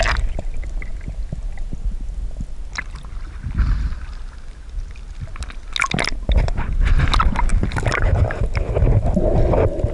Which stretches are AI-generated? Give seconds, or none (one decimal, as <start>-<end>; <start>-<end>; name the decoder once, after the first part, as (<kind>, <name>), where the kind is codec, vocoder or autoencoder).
7.5-8.8 (vocoder, BigVGAN v2)